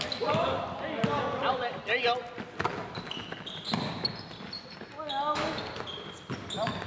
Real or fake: real